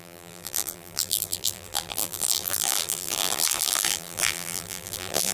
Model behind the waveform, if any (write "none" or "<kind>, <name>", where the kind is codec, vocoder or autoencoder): vocoder, BigVGAN v2